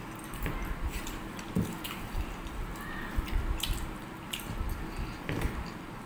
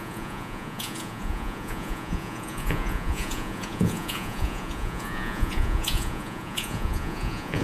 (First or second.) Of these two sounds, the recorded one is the first